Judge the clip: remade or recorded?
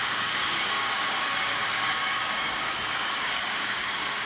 remade